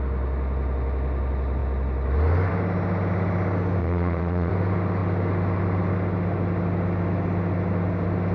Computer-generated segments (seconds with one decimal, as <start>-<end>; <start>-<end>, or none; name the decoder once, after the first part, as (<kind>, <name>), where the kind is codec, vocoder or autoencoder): 3.8-4.5 (vocoder, Vocos)